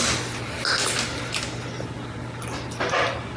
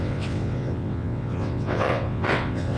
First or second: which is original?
first